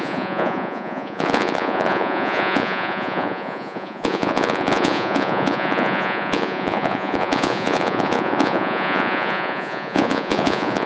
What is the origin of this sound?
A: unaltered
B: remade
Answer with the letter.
B